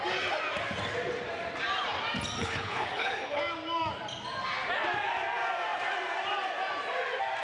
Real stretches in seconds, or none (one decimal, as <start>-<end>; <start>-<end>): 0.0-2.4; 3.4-7.4